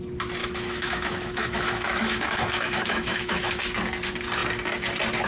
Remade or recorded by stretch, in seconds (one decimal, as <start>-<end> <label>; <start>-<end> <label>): 0.0-0.4 recorded; 0.4-3.6 remade; 3.6-5.3 recorded